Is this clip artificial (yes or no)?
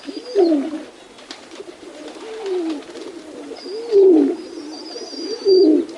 no